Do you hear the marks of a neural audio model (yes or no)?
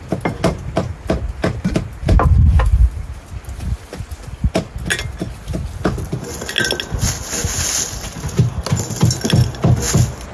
no